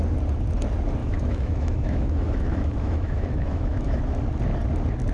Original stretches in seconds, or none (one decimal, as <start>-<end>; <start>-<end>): 0.0-1.0; 4.0-5.1

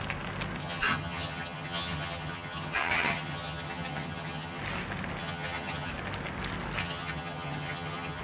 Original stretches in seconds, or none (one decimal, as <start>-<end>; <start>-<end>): 0.0-0.6; 4.6-5.2; 5.9-6.8